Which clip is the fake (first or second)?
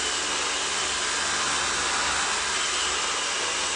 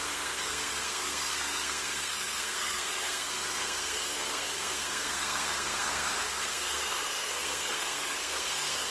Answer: second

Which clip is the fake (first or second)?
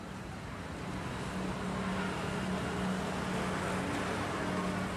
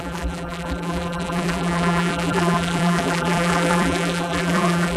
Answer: second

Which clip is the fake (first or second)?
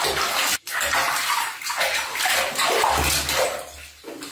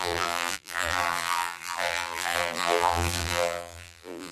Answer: second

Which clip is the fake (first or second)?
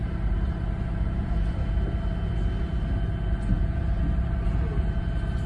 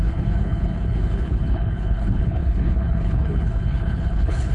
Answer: second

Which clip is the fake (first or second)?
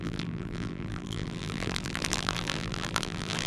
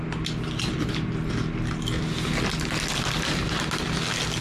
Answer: first